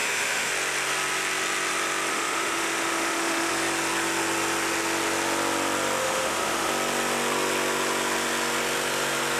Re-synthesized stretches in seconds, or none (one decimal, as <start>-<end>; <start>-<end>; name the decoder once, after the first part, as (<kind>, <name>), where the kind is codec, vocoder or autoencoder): 0.0-0.5 (autoencoder, DAC-VAE); 2.1-3.5; 6.0-6.7